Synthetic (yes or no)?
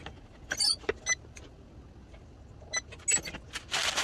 no